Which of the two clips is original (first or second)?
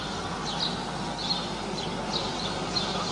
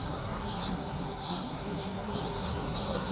first